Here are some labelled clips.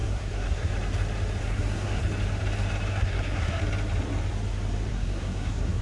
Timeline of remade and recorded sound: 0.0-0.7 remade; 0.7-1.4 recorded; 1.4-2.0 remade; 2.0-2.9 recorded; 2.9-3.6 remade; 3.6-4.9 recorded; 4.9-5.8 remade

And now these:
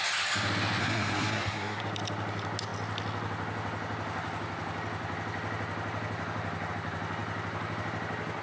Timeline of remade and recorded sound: 0.0-0.8 recorded; 0.8-1.8 remade; 1.8-8.4 recorded

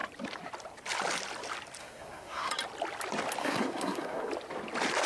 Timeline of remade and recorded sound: 0.0-1.8 recorded; 1.8-2.5 remade; 2.5-3.4 recorded; 3.4-4.3 remade; 4.3-5.1 recorded